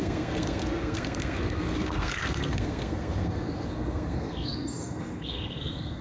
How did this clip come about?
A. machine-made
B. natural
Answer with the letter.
A